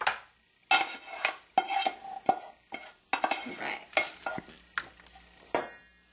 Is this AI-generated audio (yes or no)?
no